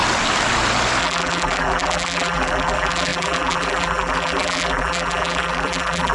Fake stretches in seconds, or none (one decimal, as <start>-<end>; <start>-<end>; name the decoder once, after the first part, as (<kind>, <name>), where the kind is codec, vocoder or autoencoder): 1.0-6.1 (vocoder, BigVGAN v2)